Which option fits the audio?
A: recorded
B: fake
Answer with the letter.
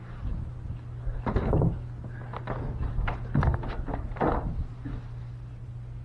A